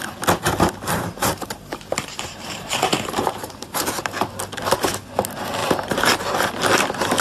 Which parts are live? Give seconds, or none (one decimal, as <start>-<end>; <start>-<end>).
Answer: 0.0-1.2; 4.0-5.6; 6.2-7.2